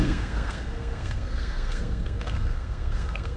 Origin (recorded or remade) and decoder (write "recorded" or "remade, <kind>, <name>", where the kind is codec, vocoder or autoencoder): remade, codec, SNAC